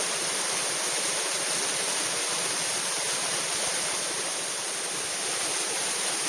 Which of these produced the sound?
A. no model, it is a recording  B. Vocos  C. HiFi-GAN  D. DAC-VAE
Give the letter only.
A